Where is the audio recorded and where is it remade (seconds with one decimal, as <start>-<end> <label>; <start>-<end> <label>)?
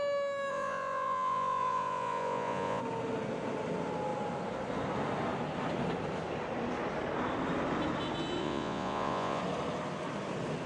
0.0-0.5 recorded; 0.5-2.8 remade; 2.8-8.4 recorded; 8.4-9.4 remade; 9.4-10.7 recorded